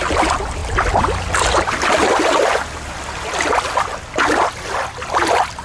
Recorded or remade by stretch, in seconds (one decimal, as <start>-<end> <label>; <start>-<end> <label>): 0.0-5.6 recorded